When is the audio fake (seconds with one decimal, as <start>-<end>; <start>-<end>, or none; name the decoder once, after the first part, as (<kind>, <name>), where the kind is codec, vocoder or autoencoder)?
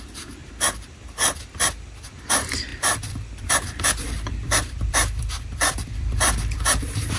0.0-0.4 (vocoder, BigVGAN v2); 2.3-7.2